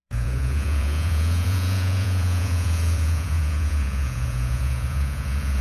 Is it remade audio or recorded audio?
remade